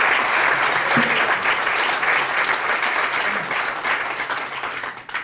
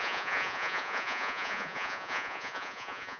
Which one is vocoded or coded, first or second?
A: second